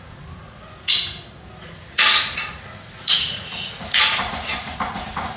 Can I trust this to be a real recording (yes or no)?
no